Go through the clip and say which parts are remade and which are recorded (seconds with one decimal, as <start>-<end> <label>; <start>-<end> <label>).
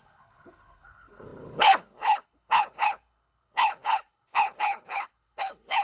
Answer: 0.0-5.8 remade